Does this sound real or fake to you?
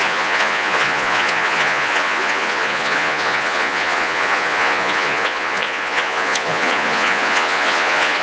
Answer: fake